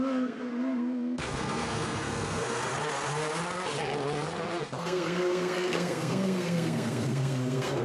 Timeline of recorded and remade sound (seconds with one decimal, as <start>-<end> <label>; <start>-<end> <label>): 0.0-2.7 remade; 2.7-4.6 recorded; 4.6-7.8 remade